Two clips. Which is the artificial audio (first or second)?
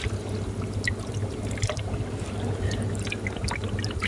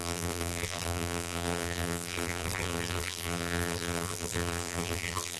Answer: second